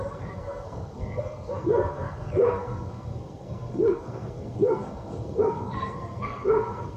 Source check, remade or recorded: remade